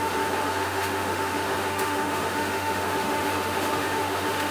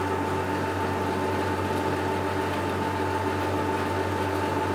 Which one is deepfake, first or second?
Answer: first